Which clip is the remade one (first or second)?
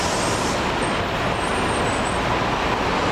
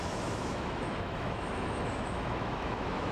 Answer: second